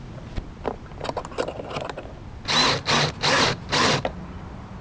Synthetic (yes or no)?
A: no